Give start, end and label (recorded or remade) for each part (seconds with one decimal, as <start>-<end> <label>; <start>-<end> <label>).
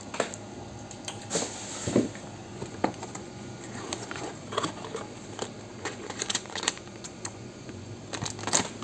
0.0-2.4 recorded; 2.4-4.3 remade; 4.3-5.7 recorded; 5.7-8.0 remade; 8.0-8.8 recorded